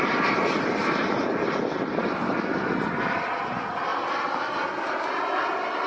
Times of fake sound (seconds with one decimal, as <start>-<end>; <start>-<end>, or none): none